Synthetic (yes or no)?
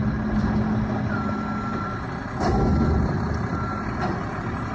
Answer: no